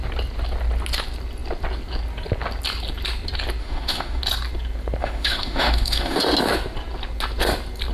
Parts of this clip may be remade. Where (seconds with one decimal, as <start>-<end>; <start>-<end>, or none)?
3.6-4.2; 5.0-6.2